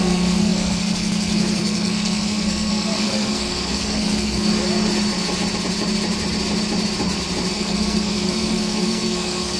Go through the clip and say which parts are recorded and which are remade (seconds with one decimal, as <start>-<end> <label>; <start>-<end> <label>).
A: 0.0-4.5 remade; 4.5-7.5 recorded; 7.5-9.6 remade